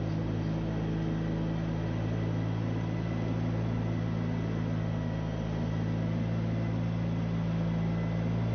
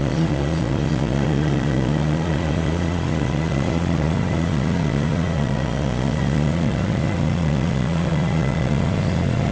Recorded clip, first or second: first